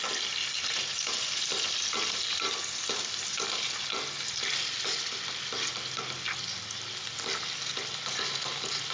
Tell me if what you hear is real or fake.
real